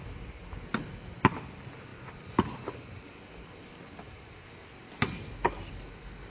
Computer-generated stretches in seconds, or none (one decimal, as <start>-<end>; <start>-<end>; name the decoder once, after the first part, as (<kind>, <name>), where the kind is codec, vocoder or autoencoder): none